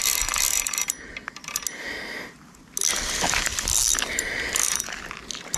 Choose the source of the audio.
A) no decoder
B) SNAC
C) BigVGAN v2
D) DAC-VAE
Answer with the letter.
A